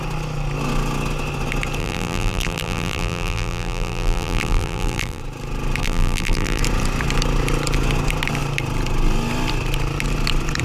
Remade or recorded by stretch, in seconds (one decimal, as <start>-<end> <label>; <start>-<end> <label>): 0.0-1.8 recorded; 1.8-5.2 remade; 5.2-5.8 recorded; 5.8-6.6 remade; 6.6-10.6 recorded